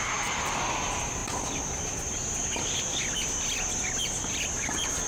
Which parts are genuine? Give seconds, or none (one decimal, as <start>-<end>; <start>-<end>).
0.0-5.1